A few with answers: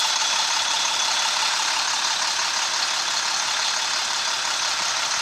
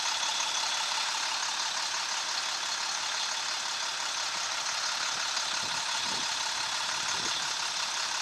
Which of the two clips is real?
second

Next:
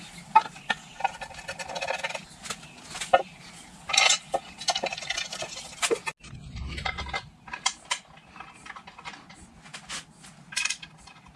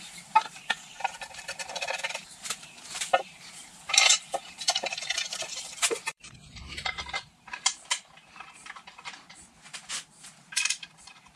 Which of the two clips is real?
first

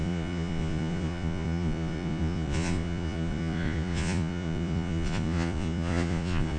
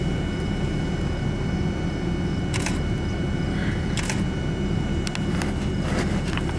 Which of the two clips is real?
second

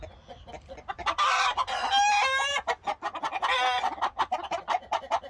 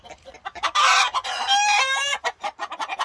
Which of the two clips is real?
first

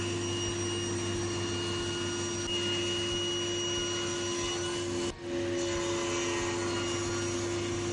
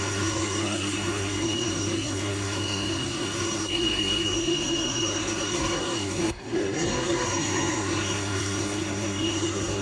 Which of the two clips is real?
first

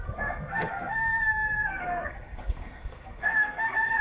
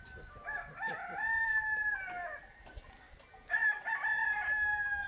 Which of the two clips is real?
second